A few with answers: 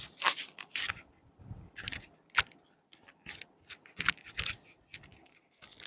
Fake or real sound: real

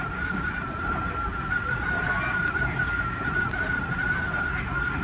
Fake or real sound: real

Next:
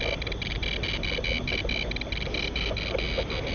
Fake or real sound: real